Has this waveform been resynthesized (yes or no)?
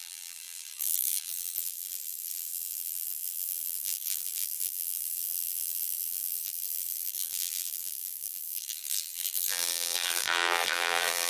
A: yes